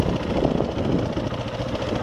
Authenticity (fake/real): real